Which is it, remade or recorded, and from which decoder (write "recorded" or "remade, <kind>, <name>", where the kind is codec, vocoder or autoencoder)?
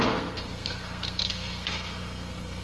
remade, codec, SNAC